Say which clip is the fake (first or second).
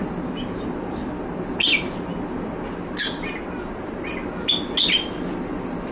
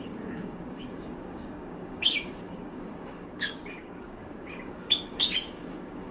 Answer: second